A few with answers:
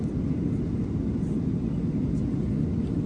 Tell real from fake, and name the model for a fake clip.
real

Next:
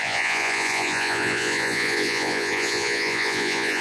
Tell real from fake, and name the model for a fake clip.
fake, vocoder, Vocos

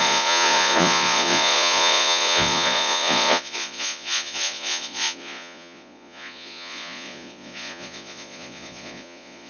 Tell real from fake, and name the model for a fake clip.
fake, vocoder, Vocos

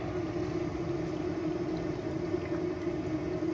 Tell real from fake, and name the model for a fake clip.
real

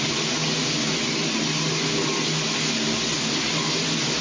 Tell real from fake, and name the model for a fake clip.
real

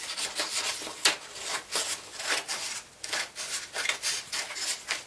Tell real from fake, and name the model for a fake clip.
real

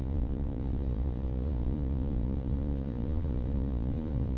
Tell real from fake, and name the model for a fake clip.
fake, vocoder, Vocos